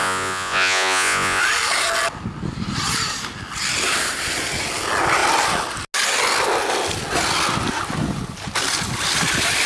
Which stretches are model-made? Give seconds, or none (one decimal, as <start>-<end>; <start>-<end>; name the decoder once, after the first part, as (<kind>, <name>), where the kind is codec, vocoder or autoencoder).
0.0-1.4 (vocoder, Vocos)